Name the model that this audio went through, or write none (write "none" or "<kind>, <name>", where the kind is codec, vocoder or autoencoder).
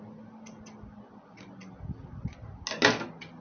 none